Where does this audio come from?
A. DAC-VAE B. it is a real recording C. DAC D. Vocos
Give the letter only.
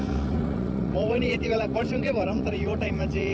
D